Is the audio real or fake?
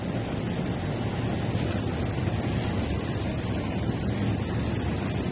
fake